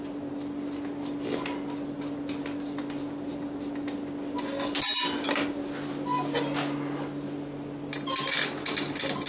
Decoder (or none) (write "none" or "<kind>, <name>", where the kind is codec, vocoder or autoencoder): none